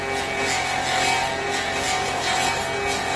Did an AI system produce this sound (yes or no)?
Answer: no